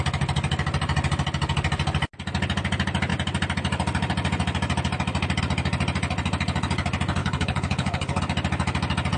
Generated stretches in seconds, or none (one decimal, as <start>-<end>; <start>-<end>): 7.2-8.2